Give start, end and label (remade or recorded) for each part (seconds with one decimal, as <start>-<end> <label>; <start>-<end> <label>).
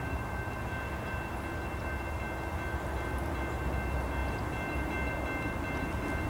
0.0-6.3 recorded